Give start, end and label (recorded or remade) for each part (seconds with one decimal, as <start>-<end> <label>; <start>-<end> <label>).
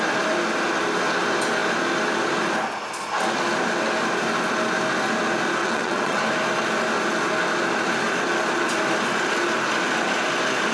0.0-5.6 recorded; 5.6-6.2 remade; 6.2-10.7 recorded